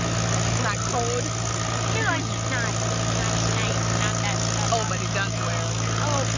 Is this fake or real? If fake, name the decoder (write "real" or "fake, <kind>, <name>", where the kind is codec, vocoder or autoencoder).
real